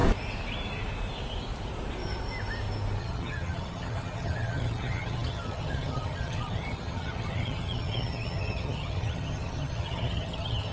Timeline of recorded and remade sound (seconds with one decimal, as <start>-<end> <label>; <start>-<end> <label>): 0.0-3.0 recorded; 3.0-10.7 remade